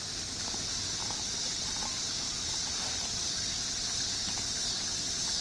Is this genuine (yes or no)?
yes